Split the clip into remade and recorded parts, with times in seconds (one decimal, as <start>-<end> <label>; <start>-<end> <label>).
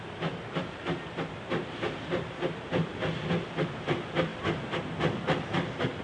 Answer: 0.0-6.0 recorded